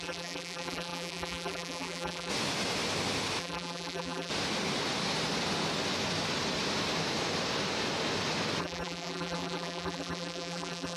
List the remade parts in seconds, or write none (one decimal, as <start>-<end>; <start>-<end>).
0.0-2.3; 3.4-4.3; 8.6-11.0